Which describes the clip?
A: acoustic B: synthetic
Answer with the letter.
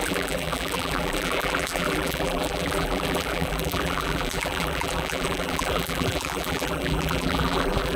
B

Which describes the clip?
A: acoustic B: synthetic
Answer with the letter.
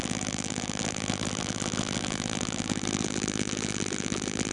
B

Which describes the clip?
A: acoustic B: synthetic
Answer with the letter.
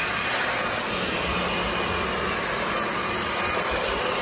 A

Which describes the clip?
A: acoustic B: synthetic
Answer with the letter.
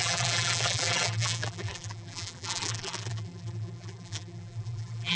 B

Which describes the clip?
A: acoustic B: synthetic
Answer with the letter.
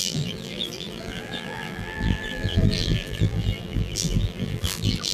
B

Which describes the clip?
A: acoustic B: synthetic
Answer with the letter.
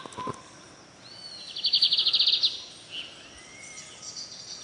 A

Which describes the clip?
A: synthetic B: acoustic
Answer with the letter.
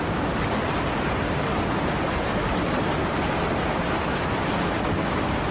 B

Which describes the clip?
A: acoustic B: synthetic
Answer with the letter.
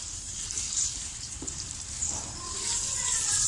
B